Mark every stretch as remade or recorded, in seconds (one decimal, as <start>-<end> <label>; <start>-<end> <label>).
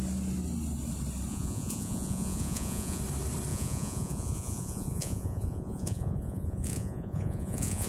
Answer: 0.0-1.3 recorded; 1.3-3.0 remade; 3.0-3.5 recorded; 3.5-7.9 remade